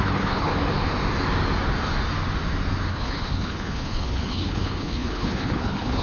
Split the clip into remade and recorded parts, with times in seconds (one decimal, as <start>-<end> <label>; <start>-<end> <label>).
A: 0.0-0.5 remade; 0.5-2.9 recorded; 2.9-6.0 remade

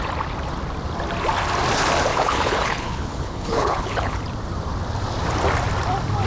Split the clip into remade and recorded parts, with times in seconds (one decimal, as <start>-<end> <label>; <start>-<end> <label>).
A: 0.0-2.1 recorded; 2.1-4.2 remade; 4.2-6.3 recorded

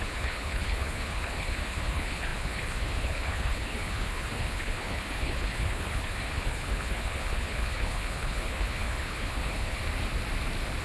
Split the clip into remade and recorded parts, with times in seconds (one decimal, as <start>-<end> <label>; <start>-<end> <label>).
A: 0.0-9.8 remade; 9.8-10.8 recorded

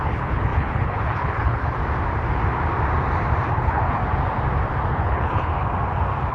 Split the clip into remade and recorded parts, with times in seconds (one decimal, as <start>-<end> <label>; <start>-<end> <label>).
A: 0.0-1.8 remade; 1.8-3.5 recorded; 3.5-4.0 remade; 4.0-4.9 recorded; 4.9-5.5 remade; 5.5-6.3 recorded

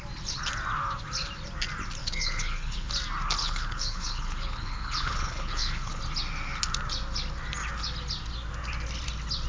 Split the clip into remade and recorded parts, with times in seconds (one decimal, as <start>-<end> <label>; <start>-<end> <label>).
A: 0.0-2.0 recorded; 2.0-2.9 remade; 2.9-3.4 recorded; 3.4-6.0 remade; 6.0-9.5 recorded

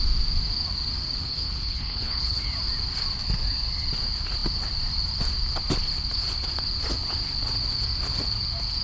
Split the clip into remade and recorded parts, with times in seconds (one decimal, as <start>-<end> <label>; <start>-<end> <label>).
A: 0.0-1.2 recorded; 1.2-2.4 remade; 2.4-8.8 recorded

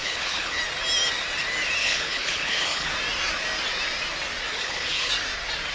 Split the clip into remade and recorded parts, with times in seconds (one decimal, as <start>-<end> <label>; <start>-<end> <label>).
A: 0.0-0.6 remade; 0.6-1.8 recorded; 1.8-2.9 remade; 2.9-4.5 recorded; 4.5-5.1 remade; 5.1-5.7 recorded

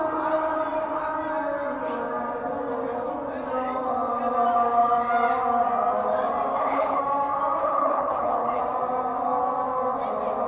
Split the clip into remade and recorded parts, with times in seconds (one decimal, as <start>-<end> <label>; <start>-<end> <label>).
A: 0.0-6.5 recorded; 6.5-7.0 remade; 7.0-7.6 recorded; 7.6-8.6 remade; 8.6-10.5 recorded